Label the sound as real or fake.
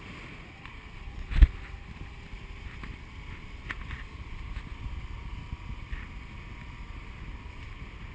real